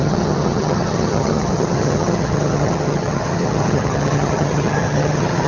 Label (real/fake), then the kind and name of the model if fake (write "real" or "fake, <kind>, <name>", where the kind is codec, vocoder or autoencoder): fake, vocoder, HiFi-GAN